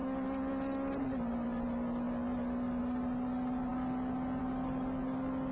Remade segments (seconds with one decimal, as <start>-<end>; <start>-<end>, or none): none